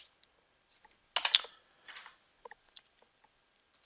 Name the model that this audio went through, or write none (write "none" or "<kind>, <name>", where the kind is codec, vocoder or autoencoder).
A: none